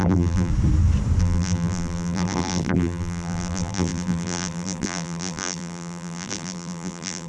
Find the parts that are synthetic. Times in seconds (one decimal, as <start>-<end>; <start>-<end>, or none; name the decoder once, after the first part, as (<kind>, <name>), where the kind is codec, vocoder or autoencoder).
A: 0.0-0.5 (vocoder, BigVGAN v2); 1.2-7.3